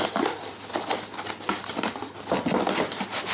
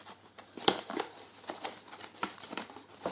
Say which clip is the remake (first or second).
second